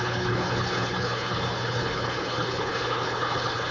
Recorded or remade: remade